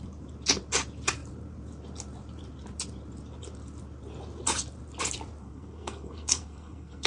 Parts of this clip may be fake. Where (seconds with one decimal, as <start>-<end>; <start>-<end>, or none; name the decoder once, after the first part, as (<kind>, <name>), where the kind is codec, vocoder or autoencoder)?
5.4-7.1 (codec, SNAC)